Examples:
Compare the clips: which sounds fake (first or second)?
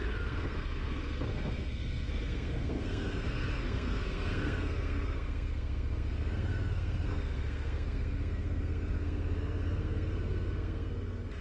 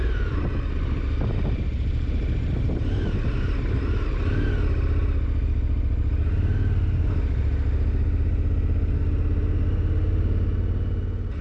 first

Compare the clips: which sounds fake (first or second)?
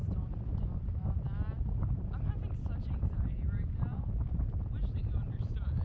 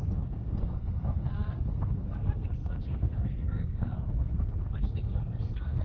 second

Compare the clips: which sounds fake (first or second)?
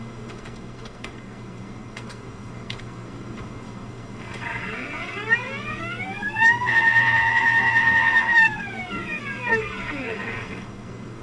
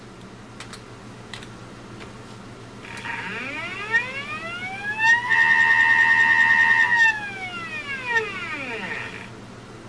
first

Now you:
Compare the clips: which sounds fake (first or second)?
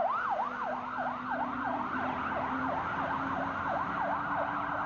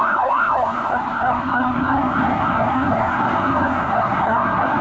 second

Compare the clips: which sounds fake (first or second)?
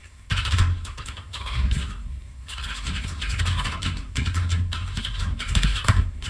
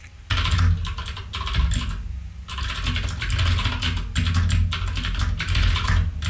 first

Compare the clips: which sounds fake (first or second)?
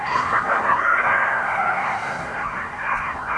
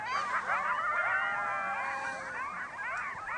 first